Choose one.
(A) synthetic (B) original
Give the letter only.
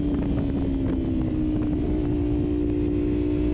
B